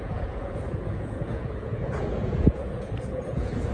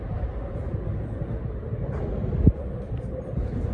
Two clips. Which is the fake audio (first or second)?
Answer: first